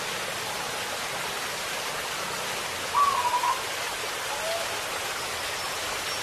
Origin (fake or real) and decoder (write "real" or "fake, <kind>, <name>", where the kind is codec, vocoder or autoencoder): real